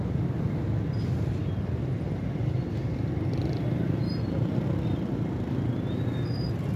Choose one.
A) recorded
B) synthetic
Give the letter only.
A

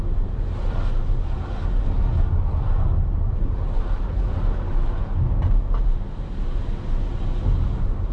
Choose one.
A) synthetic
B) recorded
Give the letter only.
B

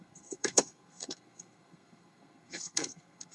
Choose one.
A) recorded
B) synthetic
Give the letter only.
B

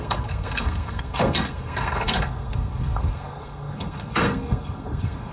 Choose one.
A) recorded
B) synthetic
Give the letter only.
B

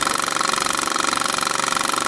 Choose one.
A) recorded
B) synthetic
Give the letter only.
A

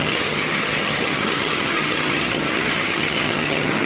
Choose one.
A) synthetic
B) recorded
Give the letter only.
A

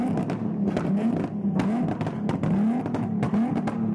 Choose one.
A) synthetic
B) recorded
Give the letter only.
B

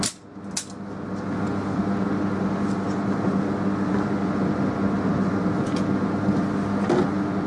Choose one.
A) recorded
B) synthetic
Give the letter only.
A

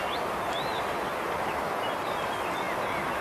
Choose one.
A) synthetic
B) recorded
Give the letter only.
B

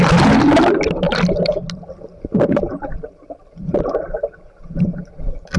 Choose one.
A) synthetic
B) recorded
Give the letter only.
B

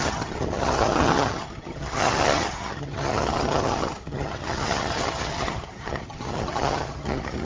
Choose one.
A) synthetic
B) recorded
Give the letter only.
A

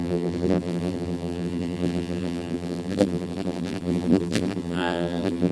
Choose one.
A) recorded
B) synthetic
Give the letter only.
B